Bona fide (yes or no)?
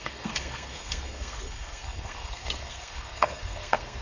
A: no